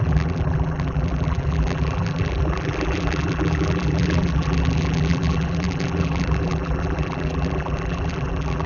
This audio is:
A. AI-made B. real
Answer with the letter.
A